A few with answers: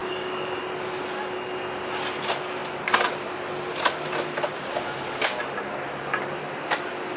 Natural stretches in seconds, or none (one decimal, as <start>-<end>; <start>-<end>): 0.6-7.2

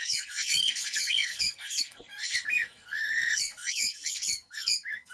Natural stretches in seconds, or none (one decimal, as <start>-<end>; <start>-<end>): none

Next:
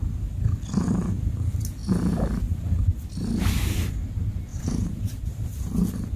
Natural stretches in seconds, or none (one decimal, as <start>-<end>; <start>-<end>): 0.0-4.5; 5.6-6.2

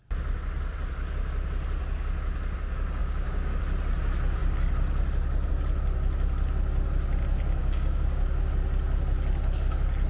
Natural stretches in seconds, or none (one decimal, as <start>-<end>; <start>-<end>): 0.0-3.0; 3.6-7.6; 8.4-10.1